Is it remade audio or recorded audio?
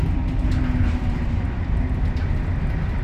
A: recorded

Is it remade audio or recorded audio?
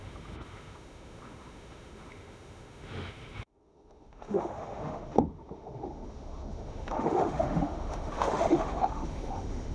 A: remade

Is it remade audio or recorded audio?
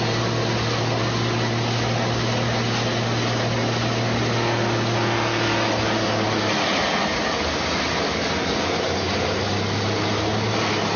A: recorded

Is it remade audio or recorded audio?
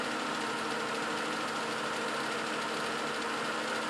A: recorded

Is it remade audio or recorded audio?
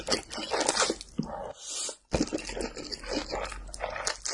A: recorded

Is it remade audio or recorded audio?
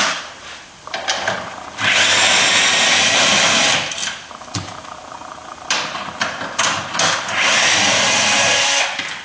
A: recorded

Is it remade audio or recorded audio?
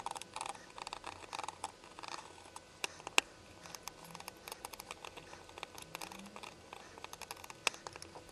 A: recorded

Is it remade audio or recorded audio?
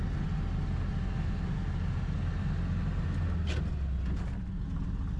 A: recorded